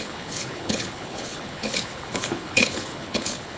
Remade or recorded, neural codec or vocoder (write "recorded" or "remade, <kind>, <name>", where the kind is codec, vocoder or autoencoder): remade, codec, HILCodec